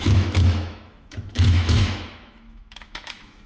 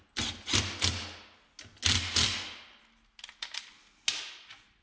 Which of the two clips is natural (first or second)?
second